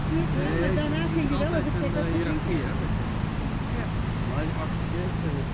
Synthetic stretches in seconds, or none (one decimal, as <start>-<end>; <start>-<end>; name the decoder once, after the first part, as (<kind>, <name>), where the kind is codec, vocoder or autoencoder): none